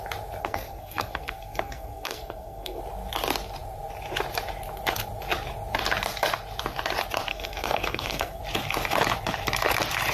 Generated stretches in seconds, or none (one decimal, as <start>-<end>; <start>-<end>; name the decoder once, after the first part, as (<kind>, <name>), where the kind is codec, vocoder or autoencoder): 0.4-2.8 (codec, SNAC); 7.3-8.4